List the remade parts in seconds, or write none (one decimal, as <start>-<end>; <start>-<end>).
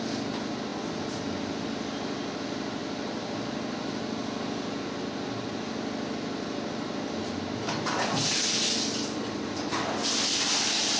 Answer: none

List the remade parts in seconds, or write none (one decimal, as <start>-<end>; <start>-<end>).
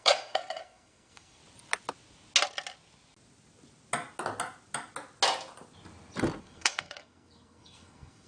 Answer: 0.0-1.4; 6.4-8.3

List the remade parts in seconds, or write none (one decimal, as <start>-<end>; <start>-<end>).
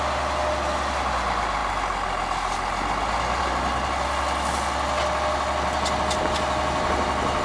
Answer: none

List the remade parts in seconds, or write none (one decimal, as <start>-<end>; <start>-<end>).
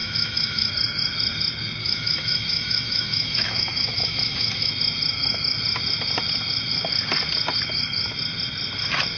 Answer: 0.0-0.7; 1.8-4.7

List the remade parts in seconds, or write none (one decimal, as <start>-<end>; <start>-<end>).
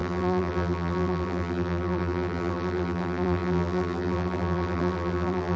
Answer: 0.0-5.6